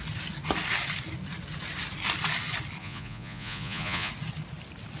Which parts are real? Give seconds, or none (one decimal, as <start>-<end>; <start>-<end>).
0.0-2.8; 4.1-5.0